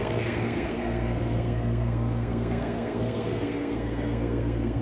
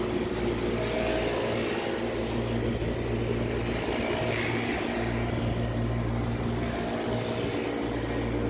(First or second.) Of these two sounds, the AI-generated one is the first